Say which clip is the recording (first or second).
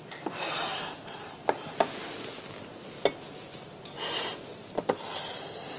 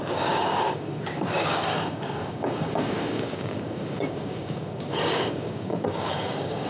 first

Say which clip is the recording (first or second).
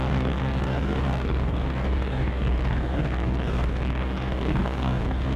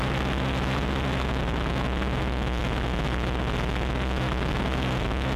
second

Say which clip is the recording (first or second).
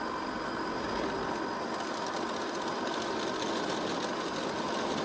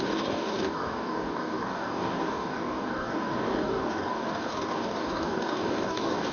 first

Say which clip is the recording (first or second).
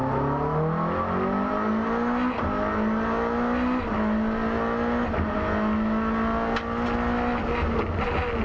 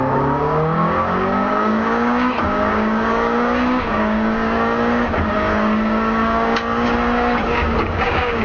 first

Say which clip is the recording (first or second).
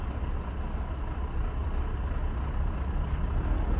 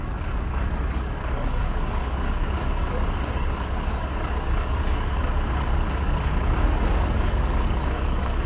first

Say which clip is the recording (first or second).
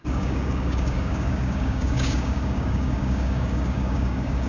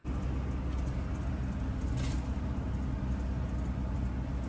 second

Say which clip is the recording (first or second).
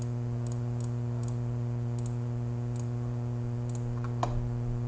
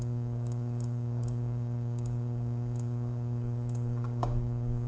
first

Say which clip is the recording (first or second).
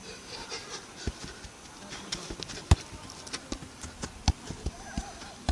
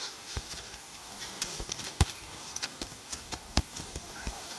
first